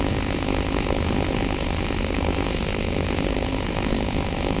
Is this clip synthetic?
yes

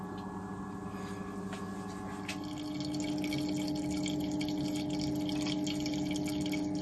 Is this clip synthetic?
no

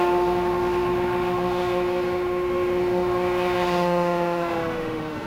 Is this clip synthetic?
yes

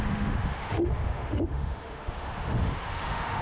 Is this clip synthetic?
yes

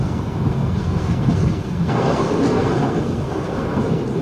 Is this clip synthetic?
yes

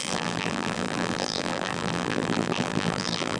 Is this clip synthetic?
yes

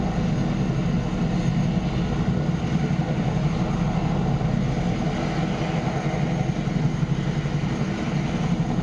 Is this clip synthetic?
no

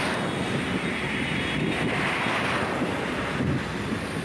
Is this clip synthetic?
no